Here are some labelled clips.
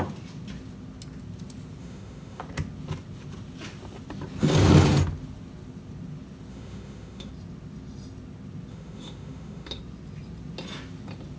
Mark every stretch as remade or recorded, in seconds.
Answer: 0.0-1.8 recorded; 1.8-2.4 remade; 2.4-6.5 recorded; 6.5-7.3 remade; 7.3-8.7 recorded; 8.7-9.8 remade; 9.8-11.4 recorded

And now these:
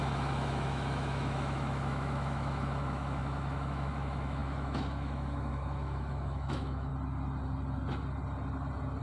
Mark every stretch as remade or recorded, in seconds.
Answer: 0.0-6.9 remade; 6.9-9.0 recorded

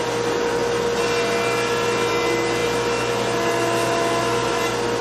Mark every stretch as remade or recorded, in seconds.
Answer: 0.0-5.0 recorded

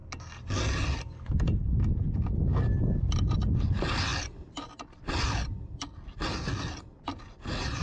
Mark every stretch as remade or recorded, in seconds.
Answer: 0.0-7.8 recorded

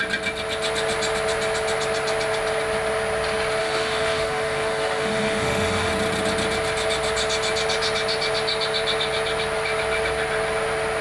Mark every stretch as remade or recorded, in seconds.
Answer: 0.0-3.6 recorded; 3.6-5.9 remade; 5.9-11.0 recorded

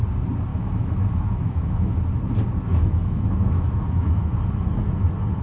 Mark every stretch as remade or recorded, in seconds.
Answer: 0.0-0.5 recorded; 0.5-1.9 remade; 1.9-2.7 recorded; 2.7-4.3 remade; 4.3-5.4 recorded

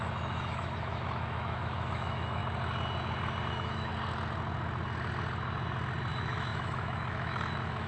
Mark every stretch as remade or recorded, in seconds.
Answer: 0.0-2.4 remade; 2.4-3.5 recorded; 3.5-3.9 remade; 3.9-6.1 recorded; 6.1-7.9 remade